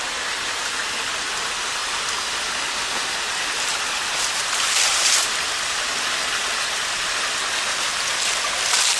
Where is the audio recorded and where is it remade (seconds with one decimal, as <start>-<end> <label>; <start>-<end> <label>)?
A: 0.0-9.0 recorded